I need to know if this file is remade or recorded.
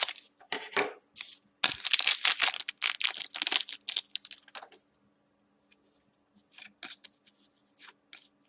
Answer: recorded